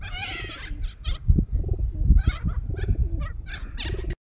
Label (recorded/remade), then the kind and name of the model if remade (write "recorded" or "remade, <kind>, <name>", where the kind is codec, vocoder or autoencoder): recorded